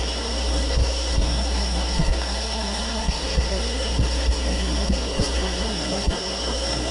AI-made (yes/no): yes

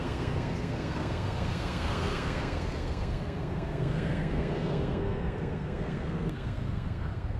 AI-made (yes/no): yes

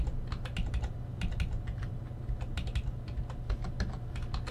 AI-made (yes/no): no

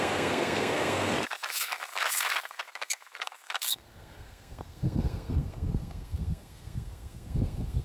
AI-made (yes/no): yes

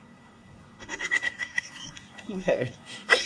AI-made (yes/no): yes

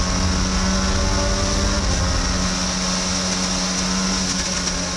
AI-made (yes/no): no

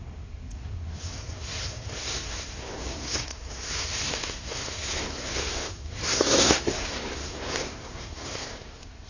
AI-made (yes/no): yes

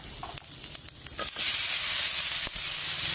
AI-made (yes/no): no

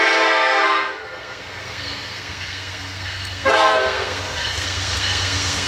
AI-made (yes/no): yes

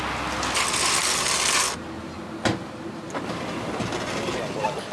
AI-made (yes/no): no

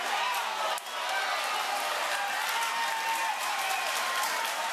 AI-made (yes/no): no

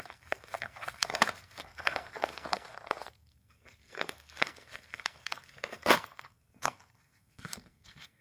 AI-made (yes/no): yes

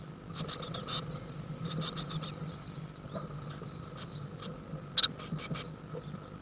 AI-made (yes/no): no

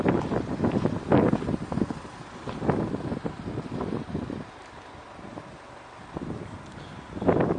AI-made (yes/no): no